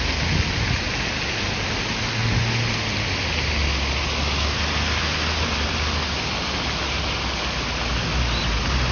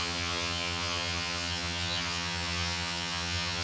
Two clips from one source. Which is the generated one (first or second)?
second